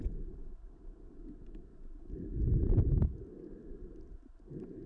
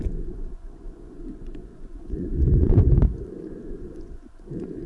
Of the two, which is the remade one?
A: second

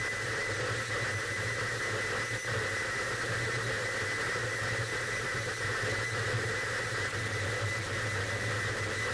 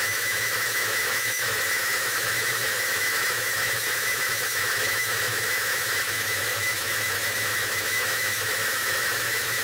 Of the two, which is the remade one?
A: second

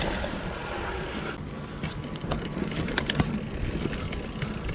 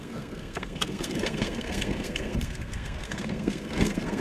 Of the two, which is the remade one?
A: second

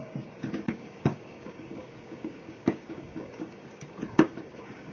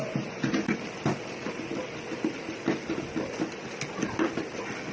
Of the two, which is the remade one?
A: first